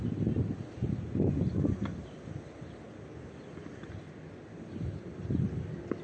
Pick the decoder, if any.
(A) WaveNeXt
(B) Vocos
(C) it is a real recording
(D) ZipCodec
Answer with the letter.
C